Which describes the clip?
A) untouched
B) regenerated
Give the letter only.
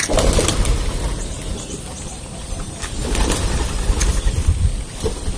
A